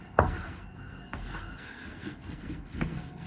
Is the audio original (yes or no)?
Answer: no